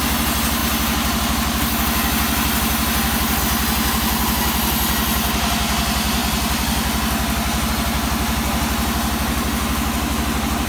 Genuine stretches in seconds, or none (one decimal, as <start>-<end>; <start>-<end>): 0.0-10.7